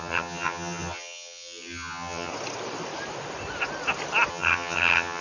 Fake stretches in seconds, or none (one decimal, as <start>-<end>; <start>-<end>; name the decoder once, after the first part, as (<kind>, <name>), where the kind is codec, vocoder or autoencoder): 0.0-2.3 (vocoder, HiFi-GAN); 4.3-5.2